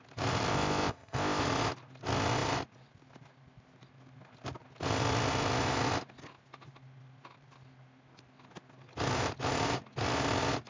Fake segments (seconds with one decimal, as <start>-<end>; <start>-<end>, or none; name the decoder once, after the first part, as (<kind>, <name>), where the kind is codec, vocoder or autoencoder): 0.5-1.4 (codec, ZipCodec)